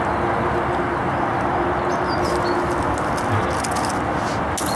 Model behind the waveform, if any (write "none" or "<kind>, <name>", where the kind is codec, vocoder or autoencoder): none